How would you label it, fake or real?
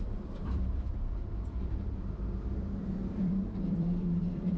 fake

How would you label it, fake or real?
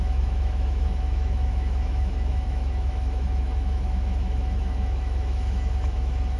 fake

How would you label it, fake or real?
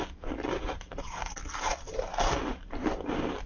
real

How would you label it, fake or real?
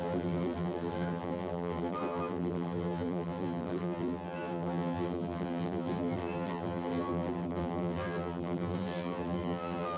fake